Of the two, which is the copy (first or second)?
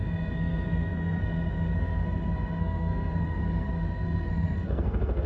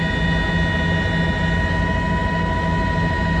first